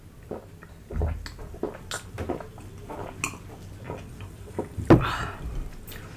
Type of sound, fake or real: real